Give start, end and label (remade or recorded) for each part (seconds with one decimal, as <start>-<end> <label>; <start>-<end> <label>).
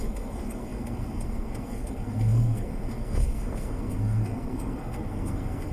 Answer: 0.0-5.7 remade